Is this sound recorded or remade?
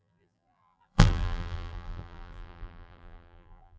remade